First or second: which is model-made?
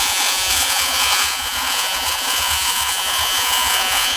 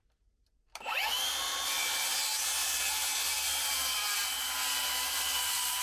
first